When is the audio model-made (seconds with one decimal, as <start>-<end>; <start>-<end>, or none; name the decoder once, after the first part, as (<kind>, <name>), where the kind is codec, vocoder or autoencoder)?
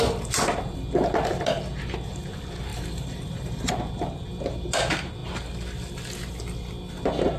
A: 2.7-3.7 (vocoder, BigVGAN v2)